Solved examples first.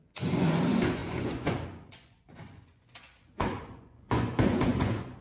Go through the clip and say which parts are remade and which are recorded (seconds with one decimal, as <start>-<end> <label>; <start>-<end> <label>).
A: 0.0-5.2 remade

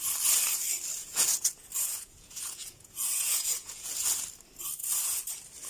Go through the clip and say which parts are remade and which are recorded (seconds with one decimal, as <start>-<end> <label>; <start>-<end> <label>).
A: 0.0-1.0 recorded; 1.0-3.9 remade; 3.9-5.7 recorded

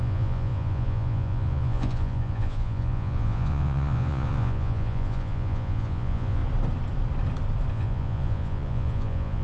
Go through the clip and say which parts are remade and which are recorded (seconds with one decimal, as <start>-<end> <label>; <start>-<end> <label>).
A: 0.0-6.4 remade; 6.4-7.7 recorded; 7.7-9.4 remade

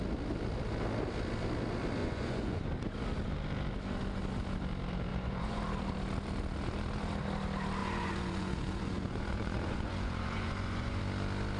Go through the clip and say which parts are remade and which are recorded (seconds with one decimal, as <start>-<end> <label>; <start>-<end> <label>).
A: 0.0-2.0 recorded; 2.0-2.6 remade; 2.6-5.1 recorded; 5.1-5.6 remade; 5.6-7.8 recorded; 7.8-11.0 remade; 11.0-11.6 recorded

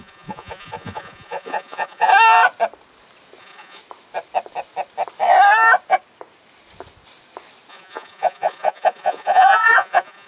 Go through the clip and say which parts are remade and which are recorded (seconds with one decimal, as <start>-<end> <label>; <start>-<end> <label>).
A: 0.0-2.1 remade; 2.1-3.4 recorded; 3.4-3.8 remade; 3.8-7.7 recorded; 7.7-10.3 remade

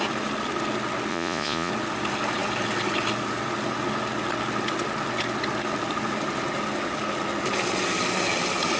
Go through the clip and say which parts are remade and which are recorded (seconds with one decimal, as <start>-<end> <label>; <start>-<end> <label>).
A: 0.0-1.1 recorded; 1.1-1.7 remade; 1.7-8.8 recorded